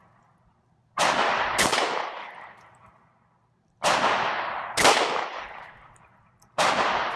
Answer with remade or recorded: recorded